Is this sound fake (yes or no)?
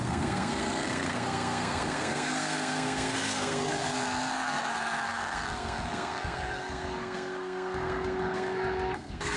yes